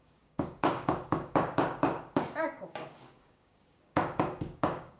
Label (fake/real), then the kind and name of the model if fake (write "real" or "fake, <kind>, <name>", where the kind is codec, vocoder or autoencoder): fake, codec, DAC